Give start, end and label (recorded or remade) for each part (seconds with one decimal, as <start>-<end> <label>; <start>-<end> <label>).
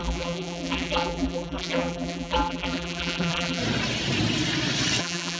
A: 0.0-3.6 remade; 3.6-5.0 recorded; 5.0-5.4 remade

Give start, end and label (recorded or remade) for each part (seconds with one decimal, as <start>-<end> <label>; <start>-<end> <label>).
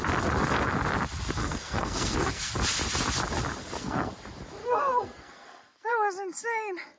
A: 0.0-1.4 recorded; 1.4-2.5 remade; 2.5-3.6 recorded; 3.6-4.1 remade; 4.1-4.6 recorded; 4.6-5.9 remade; 5.9-7.0 recorded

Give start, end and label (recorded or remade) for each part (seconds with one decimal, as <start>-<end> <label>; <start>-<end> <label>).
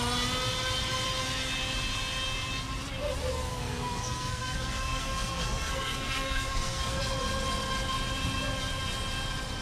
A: 0.0-3.5 recorded; 3.5-7.0 remade; 7.0-9.6 recorded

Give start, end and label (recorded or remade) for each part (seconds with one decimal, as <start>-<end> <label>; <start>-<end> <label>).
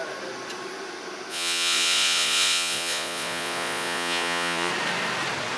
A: 0.0-1.3 recorded; 1.3-4.7 remade; 4.7-5.6 recorded